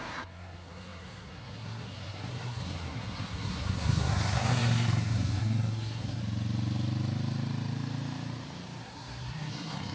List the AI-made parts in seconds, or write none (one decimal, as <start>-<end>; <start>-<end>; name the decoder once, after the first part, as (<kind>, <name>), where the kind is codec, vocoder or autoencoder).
0.0-6.2 (codec, SNAC); 8.8-9.9